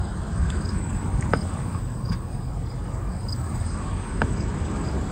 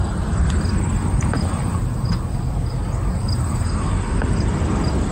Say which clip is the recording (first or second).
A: second